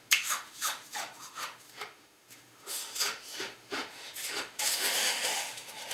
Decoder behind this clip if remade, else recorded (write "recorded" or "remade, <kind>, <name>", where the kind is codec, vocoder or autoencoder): remade, autoencoder, DAC-VAE